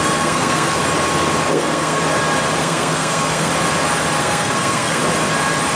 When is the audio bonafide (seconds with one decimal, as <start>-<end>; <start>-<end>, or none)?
0.8-1.5; 2.0-2.6; 3.5-4.2; 5.0-5.8